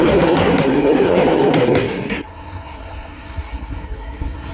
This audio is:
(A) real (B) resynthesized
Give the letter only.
B